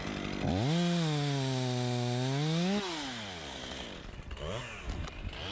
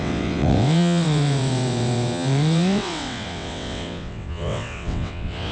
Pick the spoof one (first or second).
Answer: second